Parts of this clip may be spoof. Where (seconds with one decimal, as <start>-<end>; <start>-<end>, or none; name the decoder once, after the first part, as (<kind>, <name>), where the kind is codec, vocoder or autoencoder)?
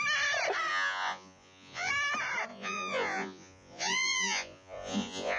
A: 0.7-1.9 (vocoder, Vocos); 2.5-5.4